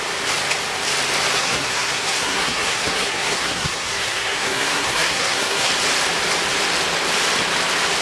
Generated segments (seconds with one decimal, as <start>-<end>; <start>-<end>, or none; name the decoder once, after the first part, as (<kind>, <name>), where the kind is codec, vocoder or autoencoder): 1.3-5.7 (codec, SNAC)